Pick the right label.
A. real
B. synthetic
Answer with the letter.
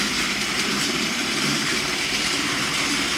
B